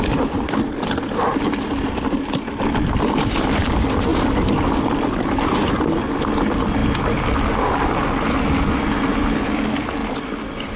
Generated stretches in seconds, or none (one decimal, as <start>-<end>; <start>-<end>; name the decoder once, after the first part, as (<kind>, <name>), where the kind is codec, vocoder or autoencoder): none